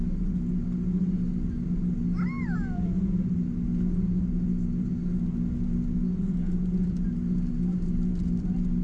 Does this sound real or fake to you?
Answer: real